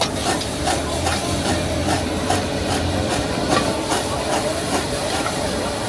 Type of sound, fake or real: real